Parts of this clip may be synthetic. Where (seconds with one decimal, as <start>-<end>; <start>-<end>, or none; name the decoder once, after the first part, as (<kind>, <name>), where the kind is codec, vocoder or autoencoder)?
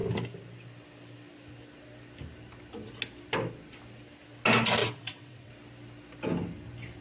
4.8-5.5 (vocoder, WaveNeXt)